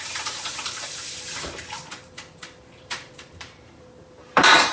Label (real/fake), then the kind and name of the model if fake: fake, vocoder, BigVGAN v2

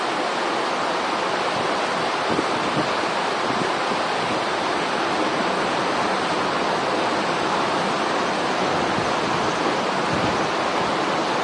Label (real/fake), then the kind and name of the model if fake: real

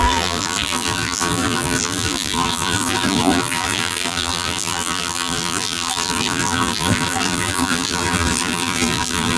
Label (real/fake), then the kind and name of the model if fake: fake, vocoder, BigVGAN v2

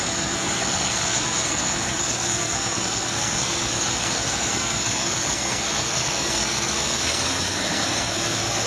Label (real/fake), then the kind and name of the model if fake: fake, codec, SNAC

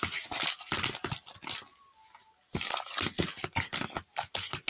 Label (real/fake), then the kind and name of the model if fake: real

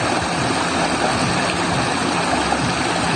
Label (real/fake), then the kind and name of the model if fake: real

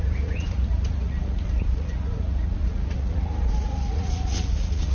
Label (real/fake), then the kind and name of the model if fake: fake, vocoder, Vocos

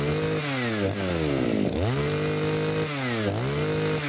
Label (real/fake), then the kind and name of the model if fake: real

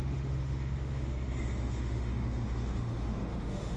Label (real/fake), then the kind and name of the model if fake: fake, autoencoder, DAC-VAE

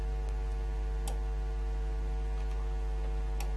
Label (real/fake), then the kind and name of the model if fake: real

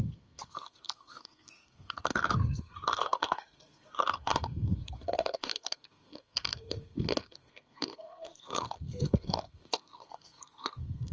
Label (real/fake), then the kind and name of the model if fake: fake, codec, SNAC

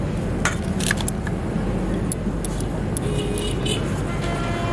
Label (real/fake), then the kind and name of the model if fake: real